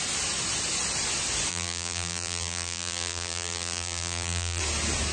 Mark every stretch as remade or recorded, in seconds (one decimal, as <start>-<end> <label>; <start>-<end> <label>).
0.0-1.5 recorded; 1.5-4.6 remade; 4.6-5.1 recorded